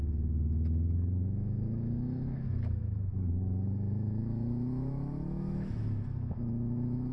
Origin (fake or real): fake